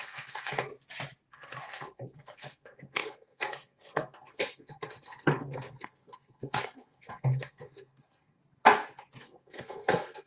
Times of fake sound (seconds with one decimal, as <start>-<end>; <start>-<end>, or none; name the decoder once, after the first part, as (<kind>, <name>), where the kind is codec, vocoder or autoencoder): 0.0-0.7 (codec, SNAC); 1.3-8.4; 9.2-10.3